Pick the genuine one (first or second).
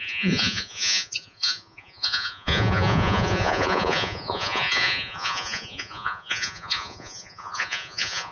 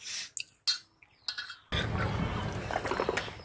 second